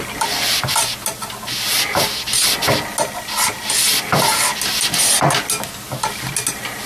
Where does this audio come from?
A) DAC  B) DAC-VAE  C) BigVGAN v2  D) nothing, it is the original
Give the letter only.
D